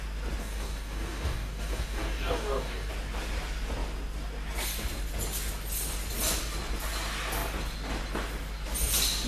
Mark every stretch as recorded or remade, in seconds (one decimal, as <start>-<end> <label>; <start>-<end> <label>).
0.0-0.4 recorded; 0.4-2.9 remade; 2.9-9.3 recorded